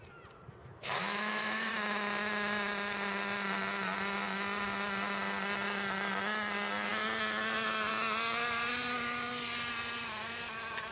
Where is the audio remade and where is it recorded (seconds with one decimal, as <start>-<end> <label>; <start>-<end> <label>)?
0.0-0.6 recorded; 0.6-1.7 remade; 1.7-10.9 recorded